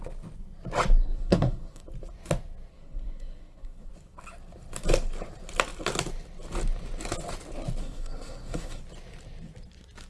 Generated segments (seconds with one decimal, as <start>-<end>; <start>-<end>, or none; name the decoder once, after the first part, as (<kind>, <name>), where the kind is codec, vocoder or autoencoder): 1.0-1.8 (codec, SNAC); 2.7-3.9; 7.8-8.8